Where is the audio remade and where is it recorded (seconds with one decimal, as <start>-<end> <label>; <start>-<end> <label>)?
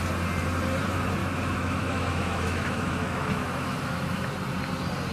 0.0-1.2 recorded; 1.2-4.3 remade; 4.3-5.1 recorded